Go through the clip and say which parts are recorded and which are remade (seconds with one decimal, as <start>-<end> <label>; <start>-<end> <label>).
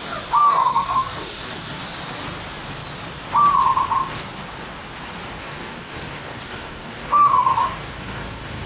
0.0-0.4 recorded; 0.4-1.8 remade; 1.8-5.4 recorded; 5.4-8.7 remade